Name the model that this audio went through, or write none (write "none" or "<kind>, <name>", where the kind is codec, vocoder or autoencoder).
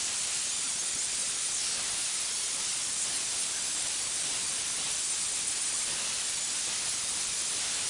none